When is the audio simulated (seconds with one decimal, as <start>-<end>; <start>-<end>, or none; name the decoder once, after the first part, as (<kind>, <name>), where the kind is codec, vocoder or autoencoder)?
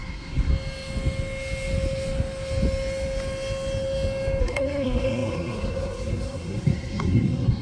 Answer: 0.0-0.5 (codec, SNAC); 4.4-7.6